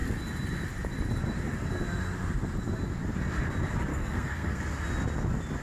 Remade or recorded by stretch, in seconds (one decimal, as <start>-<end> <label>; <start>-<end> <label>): 0.0-3.9 recorded; 3.9-4.6 remade; 4.6-5.6 recorded